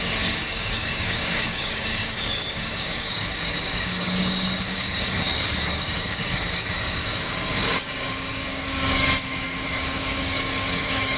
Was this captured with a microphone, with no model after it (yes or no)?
no